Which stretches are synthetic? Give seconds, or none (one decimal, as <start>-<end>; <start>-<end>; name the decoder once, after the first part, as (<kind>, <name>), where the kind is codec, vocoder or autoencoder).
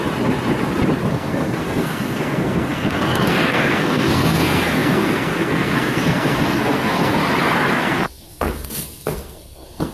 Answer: 1.1-7.2 (codec, SNAC); 7.7-9.9